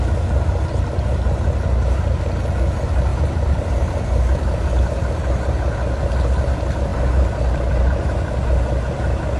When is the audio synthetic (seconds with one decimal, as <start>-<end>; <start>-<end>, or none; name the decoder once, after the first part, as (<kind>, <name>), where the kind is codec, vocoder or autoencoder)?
3.1-3.7 (vocoder, BigVGAN v2)